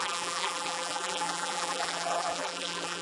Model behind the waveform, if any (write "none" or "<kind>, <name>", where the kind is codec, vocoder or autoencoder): vocoder, BigVGAN v2